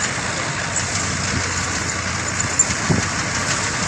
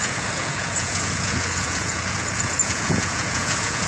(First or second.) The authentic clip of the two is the first